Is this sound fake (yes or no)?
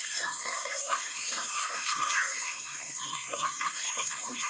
yes